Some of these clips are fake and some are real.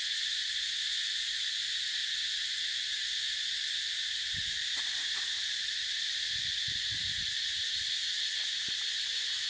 real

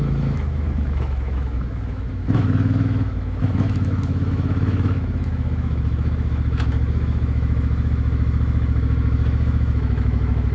fake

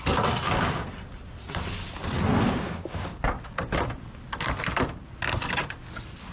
real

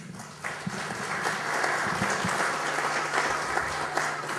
real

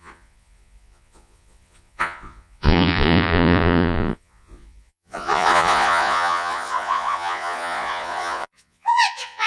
fake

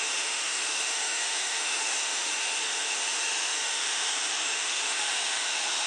fake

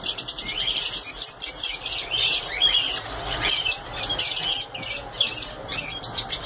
real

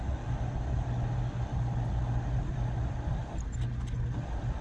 real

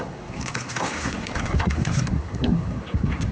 fake